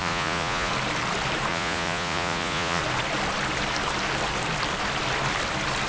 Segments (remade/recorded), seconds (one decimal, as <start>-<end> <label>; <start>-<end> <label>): 0.0-0.7 remade; 0.7-1.5 recorded; 1.5-2.8 remade; 2.8-5.9 recorded